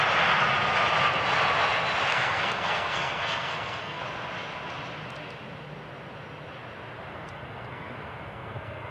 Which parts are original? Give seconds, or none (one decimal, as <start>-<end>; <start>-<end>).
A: 0.0-2.1; 4.0-7.1